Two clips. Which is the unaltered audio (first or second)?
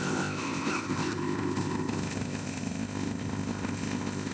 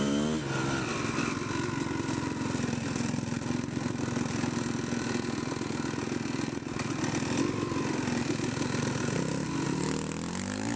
second